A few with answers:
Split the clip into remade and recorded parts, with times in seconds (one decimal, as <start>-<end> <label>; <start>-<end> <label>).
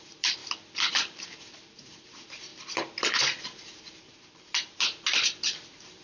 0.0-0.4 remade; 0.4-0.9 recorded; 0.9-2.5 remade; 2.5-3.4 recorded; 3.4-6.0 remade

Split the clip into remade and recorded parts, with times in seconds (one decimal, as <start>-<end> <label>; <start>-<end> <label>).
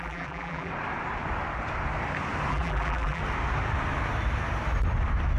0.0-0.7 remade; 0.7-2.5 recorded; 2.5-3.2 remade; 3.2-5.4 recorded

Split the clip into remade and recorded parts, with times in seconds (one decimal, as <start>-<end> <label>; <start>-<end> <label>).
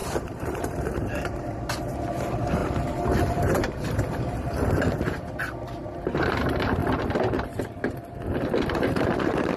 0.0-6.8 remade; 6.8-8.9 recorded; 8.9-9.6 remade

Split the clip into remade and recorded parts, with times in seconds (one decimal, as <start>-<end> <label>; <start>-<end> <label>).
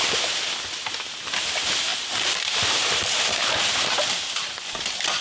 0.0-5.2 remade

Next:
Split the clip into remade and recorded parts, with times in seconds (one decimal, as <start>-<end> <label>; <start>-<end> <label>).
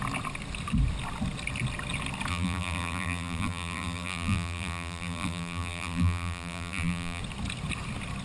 0.0-2.3 recorded; 2.3-7.2 remade; 7.2-8.2 recorded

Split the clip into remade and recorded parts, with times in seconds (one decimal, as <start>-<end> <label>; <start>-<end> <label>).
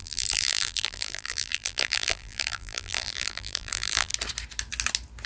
0.0-4.1 remade; 4.1-5.3 recorded